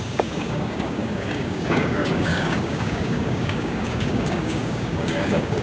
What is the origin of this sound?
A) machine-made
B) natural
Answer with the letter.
A